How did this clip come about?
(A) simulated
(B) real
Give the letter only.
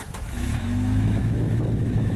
A